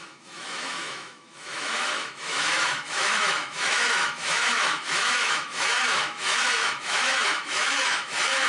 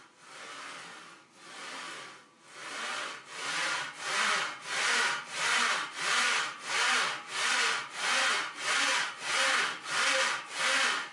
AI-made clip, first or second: first